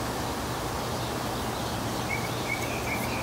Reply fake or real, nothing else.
real